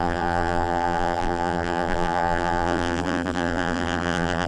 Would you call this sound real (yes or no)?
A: no